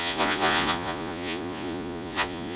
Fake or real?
fake